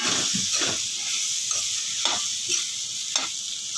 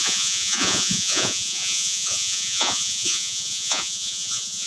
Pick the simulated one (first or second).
second